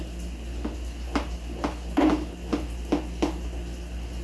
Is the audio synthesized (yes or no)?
no